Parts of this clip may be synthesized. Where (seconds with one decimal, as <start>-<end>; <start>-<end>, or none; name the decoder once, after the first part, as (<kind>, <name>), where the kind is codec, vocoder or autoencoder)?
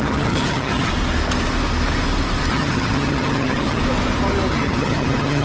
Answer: 0.0-0.9 (vocoder, HiFi-GAN); 2.5-3.8; 4.5-5.4